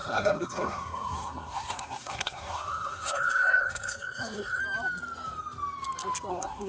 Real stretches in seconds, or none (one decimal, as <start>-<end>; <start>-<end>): 4.6-6.3